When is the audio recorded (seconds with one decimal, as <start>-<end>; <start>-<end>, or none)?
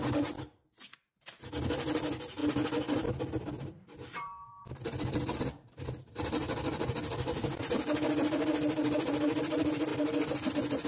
0.0-10.9